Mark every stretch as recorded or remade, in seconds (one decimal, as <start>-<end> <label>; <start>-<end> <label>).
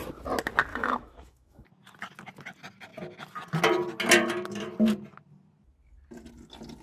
0.0-0.7 recorded; 0.7-1.7 remade; 1.7-6.8 recorded